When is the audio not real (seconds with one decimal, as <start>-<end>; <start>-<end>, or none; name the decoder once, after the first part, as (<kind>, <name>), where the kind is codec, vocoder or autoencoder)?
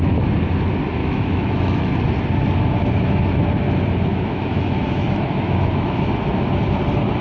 1.0-1.9 (autoencoder, DAC-VAE); 4.1-6.1